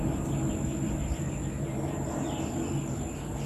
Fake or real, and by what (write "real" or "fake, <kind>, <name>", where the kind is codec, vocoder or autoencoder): real